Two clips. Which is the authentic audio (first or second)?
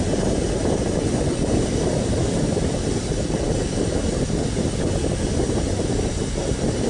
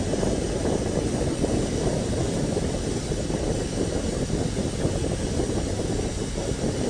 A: second